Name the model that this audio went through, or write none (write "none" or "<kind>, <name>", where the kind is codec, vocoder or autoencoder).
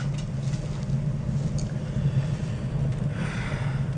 none